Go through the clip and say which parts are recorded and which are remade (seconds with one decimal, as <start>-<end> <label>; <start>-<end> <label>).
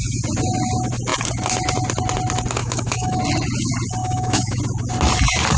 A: 0.0-2.6 recorded; 2.6-3.2 remade; 3.2-4.0 recorded; 4.0-4.6 remade; 4.6-5.6 recorded